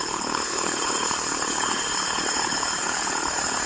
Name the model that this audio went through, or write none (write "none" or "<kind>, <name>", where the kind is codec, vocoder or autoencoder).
codec, HILCodec